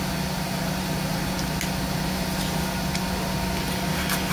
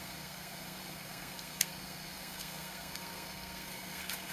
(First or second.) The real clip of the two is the first